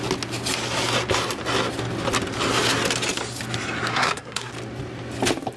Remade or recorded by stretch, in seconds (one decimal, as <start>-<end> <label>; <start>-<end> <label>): 0.0-3.9 recorded; 3.9-4.5 remade; 4.5-5.6 recorded